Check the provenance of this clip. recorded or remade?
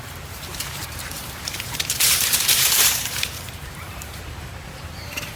remade